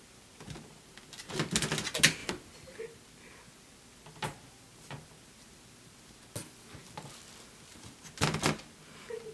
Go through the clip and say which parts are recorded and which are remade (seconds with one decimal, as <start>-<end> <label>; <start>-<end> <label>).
0.0-9.3 recorded